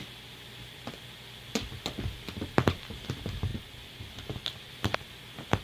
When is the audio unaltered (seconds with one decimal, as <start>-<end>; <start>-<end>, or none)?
0.0-5.6